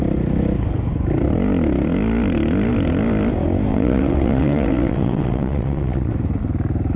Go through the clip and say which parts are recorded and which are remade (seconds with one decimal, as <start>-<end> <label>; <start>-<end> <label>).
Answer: 0.0-3.7 recorded; 3.7-6.1 remade; 6.1-7.0 recorded